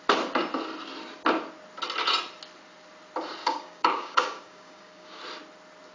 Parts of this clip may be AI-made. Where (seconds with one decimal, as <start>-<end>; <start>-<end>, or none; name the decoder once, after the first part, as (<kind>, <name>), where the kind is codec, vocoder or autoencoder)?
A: 3.4-5.2 (codec, DAC)